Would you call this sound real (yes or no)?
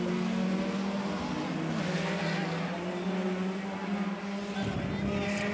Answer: yes